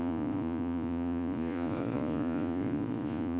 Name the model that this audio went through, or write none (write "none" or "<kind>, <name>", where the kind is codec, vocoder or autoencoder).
vocoder, Vocos